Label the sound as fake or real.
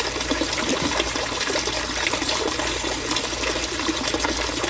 real